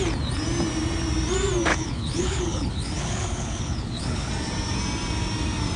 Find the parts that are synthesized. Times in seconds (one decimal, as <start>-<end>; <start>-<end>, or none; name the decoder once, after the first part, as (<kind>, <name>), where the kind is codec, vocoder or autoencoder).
1.7-4.3 (codec, HILCodec)